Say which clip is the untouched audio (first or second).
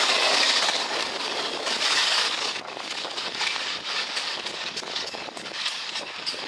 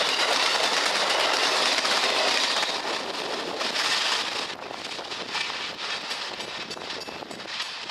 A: second